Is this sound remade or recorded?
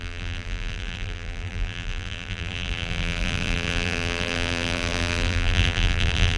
remade